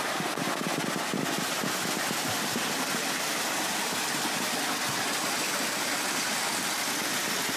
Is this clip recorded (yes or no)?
yes